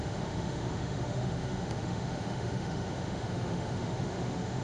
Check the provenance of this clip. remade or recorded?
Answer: remade